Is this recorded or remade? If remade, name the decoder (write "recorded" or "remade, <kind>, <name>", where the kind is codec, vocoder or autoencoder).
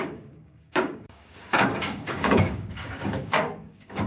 remade, codec, DAC